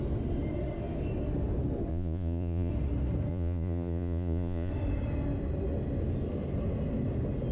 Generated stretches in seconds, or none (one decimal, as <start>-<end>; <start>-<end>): 1.9-2.7; 3.3-4.7